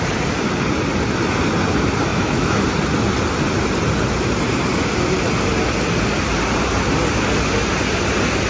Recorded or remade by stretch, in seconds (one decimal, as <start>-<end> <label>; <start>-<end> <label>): 0.0-2.1 recorded; 2.1-2.6 remade; 2.6-8.5 recorded